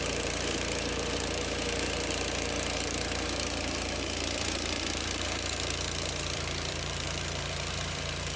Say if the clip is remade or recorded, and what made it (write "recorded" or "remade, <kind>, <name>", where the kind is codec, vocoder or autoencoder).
remade, vocoder, BigVGAN v2